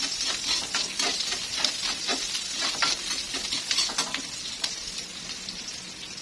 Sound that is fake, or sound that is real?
real